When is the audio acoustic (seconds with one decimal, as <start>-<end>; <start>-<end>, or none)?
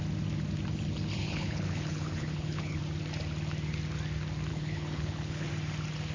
0.0-1.2; 2.8-4.5; 5.5-6.1